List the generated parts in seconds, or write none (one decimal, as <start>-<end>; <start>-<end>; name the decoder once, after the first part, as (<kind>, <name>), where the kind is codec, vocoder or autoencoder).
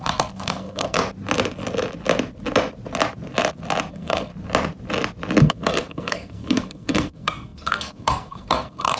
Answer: 0.0-1.0 (codec, SNAC); 3.9-4.3; 5.4-9.0